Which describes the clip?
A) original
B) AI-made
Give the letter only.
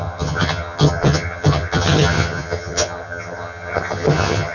B